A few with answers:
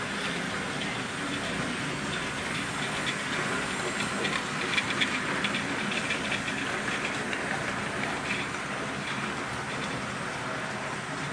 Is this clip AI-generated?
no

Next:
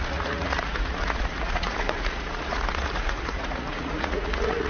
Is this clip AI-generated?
yes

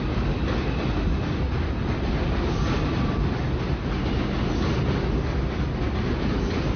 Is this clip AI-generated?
no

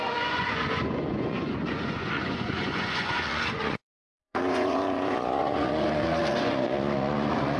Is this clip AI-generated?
yes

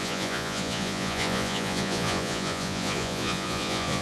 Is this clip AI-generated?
yes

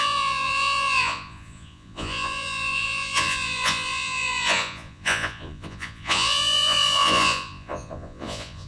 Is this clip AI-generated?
yes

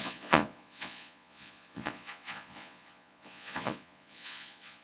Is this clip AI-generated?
yes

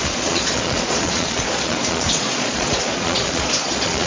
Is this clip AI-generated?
yes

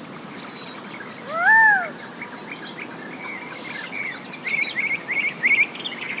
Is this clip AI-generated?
no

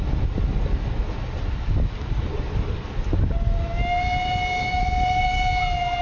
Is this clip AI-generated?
no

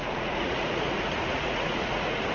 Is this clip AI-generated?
yes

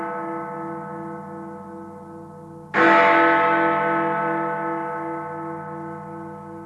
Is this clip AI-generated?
no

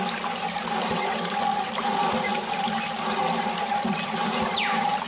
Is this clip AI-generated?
no